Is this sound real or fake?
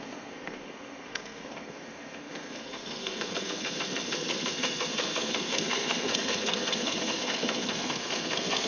fake